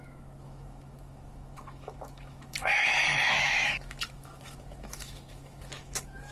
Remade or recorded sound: remade